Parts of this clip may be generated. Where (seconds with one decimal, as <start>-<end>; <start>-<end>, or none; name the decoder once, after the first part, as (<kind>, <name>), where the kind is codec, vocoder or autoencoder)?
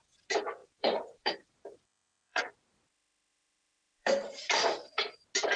0.6-2.4 (vocoder, BigVGAN v2); 3.3-4.9